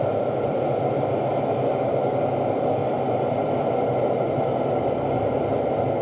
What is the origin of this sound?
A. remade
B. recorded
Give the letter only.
B